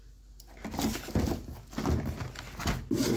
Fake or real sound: real